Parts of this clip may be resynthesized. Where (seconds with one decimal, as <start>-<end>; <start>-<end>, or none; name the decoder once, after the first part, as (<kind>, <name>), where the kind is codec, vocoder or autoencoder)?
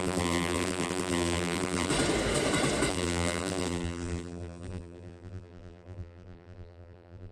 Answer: 0.0-1.9 (vocoder, BigVGAN v2); 2.9-7.3